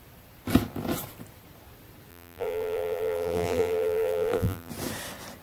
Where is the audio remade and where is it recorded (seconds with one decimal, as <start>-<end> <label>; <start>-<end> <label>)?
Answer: 0.0-2.1 recorded; 2.1-4.7 remade; 4.7-5.4 recorded